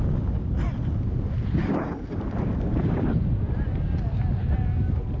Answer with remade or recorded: recorded